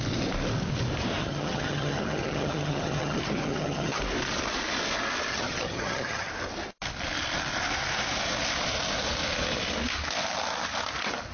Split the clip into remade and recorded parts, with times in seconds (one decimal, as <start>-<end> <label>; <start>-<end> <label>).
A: 0.0-1.2 recorded; 1.2-4.0 remade; 4.0-5.3 recorded; 5.3-6.3 remade; 6.3-11.3 recorded